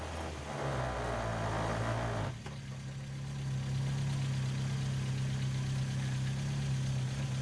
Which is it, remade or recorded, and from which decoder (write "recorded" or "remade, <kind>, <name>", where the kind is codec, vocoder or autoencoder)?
recorded